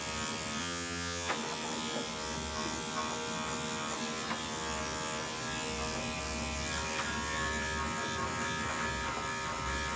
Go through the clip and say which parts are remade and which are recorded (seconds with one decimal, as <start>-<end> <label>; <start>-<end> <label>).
0.0-0.6 recorded; 0.6-1.3 remade; 1.3-10.0 recorded